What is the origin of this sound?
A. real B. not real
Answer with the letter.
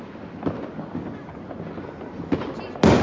A